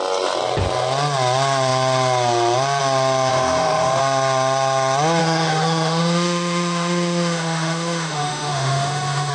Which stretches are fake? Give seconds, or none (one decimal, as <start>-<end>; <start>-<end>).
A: 3.3-4.0; 5.2-9.3